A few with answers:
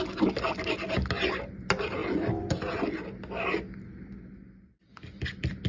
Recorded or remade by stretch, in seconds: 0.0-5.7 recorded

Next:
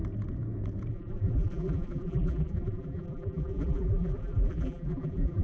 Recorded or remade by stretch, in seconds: 0.0-0.9 recorded; 0.9-5.4 remade

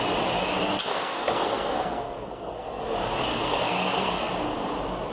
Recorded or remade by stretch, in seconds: 0.0-0.9 recorded; 0.9-2.8 remade; 2.8-3.3 recorded; 3.3-4.3 remade; 4.3-5.1 recorded

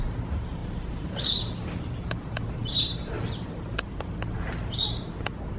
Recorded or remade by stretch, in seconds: 0.0-0.6 recorded; 0.6-4.0 remade; 4.0-5.6 recorded

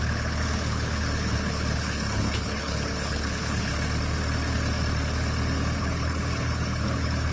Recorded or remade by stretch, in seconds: 0.0-3.7 remade; 3.7-5.8 recorded; 5.8-7.3 remade

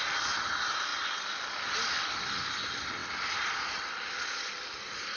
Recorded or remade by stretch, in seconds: 0.0-5.2 recorded